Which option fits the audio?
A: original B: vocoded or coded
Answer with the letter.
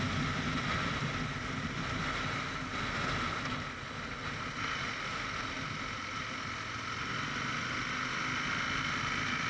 A